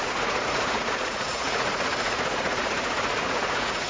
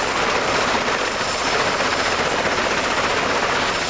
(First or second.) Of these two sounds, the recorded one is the second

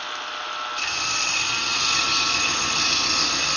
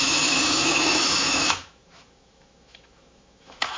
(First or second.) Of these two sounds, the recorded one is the first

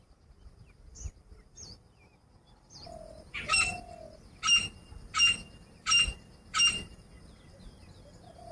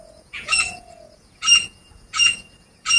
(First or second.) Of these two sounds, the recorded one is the first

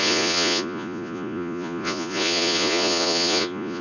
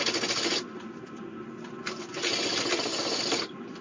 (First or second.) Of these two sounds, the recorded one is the second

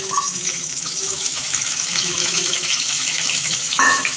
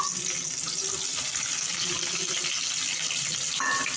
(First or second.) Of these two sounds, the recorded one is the second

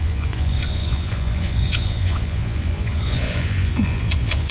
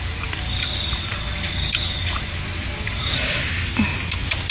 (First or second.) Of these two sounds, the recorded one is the second